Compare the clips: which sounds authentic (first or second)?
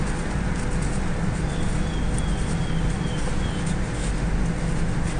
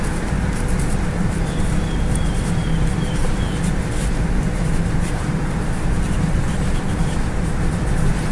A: first